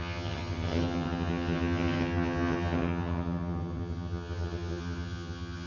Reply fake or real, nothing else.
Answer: fake